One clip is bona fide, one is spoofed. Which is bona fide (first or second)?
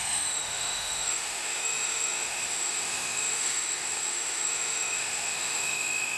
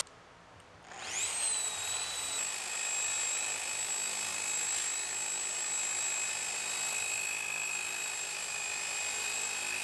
second